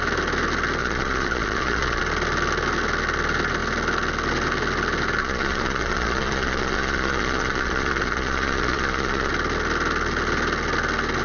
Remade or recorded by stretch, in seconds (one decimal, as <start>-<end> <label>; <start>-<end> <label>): 0.0-0.8 recorded; 0.8-2.0 remade; 2.0-5.2 recorded; 5.2-9.3 remade; 9.3-11.2 recorded